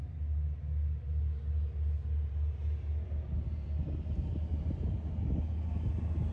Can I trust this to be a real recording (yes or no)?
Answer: yes